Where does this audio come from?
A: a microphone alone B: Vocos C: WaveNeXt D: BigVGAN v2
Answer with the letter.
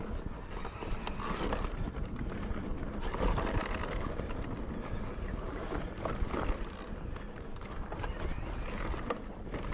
A